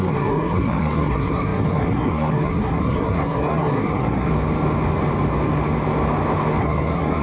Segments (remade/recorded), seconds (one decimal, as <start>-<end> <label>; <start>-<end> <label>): 0.0-4.3 remade; 4.3-6.6 recorded; 6.6-7.2 remade